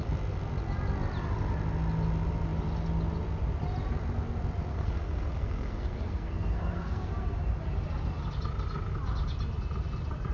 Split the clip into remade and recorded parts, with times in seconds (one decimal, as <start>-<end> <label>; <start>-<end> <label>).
0.0-4.7 recorded; 4.7-7.4 remade; 7.4-10.3 recorded